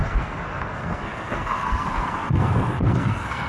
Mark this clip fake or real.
fake